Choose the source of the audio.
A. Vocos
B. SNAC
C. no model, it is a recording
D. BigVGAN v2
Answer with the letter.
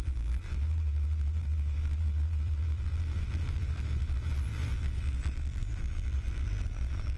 D